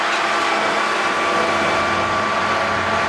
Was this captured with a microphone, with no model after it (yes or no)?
yes